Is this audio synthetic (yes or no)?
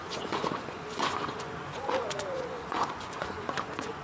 yes